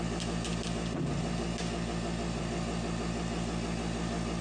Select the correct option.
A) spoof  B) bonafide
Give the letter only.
B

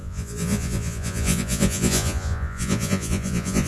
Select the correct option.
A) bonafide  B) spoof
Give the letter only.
B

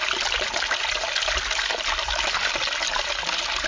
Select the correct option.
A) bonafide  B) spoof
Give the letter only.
A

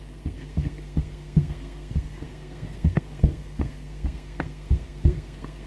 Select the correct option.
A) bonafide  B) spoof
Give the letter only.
B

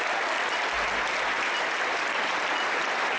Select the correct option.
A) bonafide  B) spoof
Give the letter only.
A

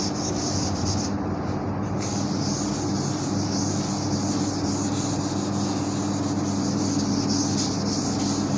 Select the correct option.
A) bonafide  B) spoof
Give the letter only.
A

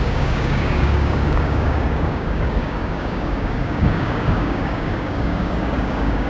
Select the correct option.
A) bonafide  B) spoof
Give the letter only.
B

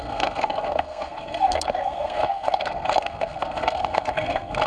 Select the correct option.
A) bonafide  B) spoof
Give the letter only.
B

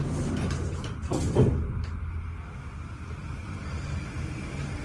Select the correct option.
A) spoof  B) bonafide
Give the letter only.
B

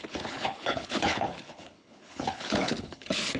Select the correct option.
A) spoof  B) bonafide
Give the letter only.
A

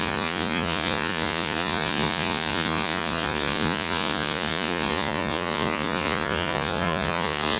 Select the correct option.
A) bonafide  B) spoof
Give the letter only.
B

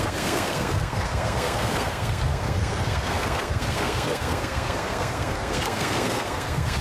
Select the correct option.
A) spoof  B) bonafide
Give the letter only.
A